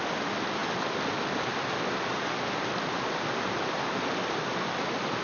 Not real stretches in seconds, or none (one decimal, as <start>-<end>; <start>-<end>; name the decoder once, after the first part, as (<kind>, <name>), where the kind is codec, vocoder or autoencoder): none